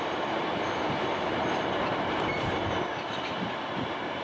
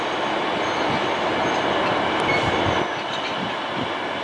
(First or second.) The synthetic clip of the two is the first